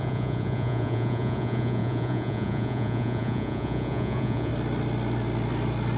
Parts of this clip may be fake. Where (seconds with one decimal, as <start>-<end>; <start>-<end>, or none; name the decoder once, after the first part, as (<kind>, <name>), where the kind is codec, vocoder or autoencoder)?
0.0-4.5 (vocoder, Vocos)